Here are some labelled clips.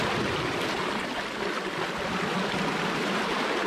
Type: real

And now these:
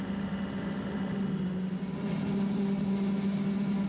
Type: real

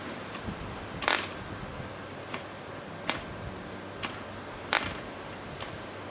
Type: real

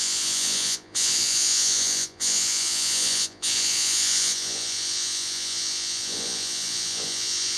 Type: fake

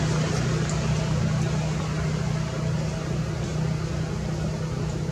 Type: real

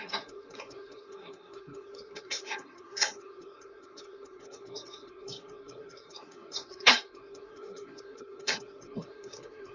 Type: fake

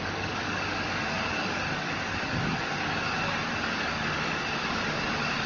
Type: fake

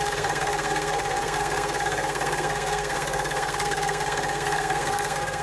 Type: fake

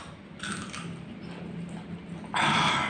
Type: real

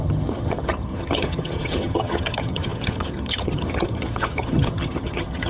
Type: fake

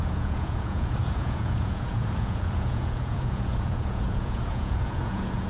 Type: fake